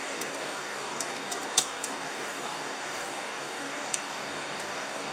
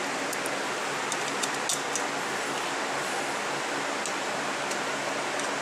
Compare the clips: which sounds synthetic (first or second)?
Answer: first